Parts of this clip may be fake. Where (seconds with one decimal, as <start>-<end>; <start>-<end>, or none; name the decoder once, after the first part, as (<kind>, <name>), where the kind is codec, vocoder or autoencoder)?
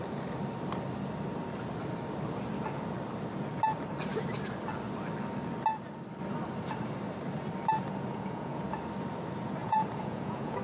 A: 8.1-8.6 (vocoder, Vocos); 9.6-10.6